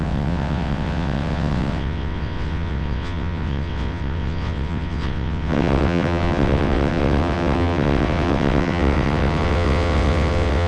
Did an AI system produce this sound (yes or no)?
yes